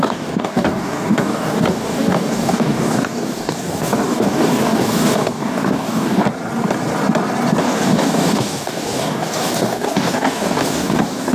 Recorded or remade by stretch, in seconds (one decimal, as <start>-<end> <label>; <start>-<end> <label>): 0.0-6.2 remade; 6.2-7.6 recorded; 7.6-11.3 remade